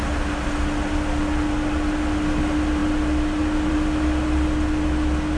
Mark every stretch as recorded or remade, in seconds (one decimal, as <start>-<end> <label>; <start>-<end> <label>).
0.0-5.4 recorded